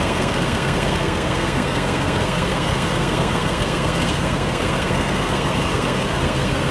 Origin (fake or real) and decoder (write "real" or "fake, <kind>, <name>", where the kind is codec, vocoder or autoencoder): fake, codec, SNAC